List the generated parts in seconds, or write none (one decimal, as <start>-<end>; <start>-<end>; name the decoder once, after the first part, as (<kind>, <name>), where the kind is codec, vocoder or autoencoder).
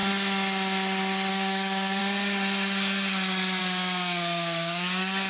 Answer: 1.3-2.0 (codec, DAC); 3.6-5.3